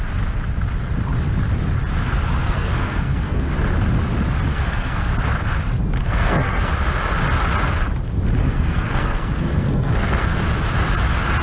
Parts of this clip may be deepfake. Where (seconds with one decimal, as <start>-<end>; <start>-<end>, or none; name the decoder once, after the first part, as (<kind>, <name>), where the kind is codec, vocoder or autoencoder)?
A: 2.4-3.5 (codec, SNAC); 4.5-5.1; 6.0-6.7; 8.4-10.4